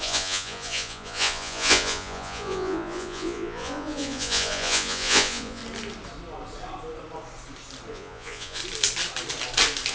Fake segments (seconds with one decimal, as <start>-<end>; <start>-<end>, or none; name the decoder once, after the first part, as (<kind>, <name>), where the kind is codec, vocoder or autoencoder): 0.0-5.6 (vocoder, Vocos); 7.9-8.6